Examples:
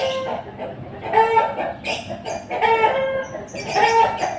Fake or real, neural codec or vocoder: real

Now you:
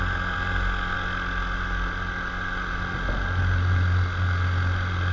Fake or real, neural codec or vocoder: real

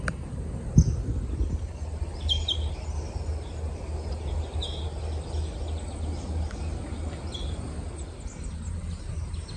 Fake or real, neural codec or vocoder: real